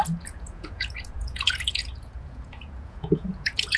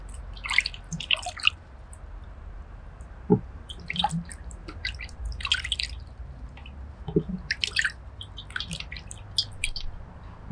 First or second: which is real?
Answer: second